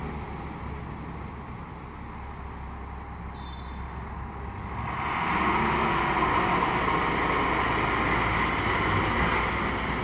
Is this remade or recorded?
recorded